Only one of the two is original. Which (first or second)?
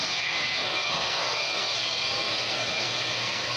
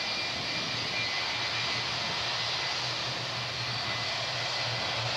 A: second